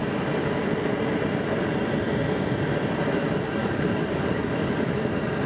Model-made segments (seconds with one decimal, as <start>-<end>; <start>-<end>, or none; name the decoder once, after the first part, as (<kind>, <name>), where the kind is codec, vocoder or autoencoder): 3.6-5.1 (codec, DAC)